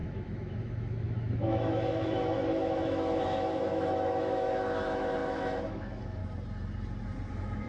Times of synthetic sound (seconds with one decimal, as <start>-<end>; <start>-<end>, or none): 0.0-6.2; 7.3-7.7